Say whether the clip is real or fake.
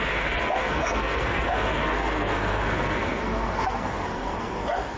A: fake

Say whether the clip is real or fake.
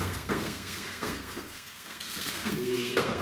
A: fake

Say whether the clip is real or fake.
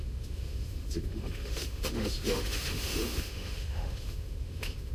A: fake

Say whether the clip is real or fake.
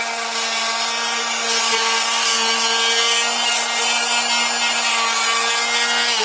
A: real